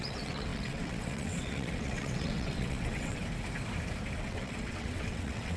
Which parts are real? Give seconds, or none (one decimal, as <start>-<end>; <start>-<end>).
3.2-4.2